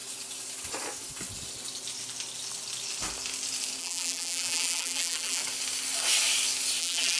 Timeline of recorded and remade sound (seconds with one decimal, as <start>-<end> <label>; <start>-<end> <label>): 0.0-3.8 recorded; 3.8-5.4 remade; 5.4-6.8 recorded; 6.8-7.2 remade